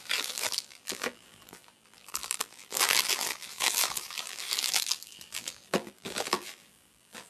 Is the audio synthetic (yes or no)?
yes